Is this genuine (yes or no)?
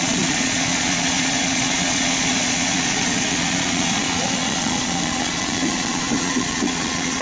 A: no